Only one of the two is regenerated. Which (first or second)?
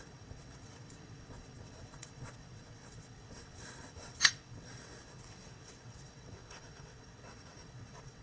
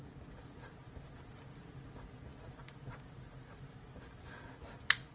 first